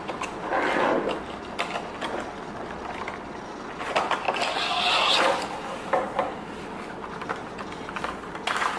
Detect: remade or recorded recorded